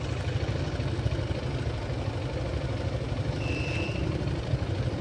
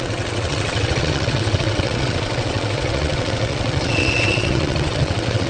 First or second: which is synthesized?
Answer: second